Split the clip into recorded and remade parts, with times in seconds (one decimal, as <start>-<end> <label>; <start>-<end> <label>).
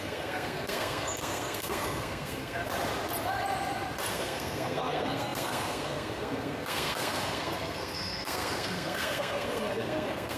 0.0-2.6 remade; 2.6-4.1 recorded; 4.1-10.4 remade